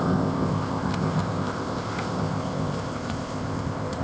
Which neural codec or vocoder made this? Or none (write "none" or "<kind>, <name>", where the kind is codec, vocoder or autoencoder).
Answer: codec, ZipCodec